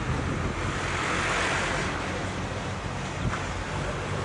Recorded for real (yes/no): yes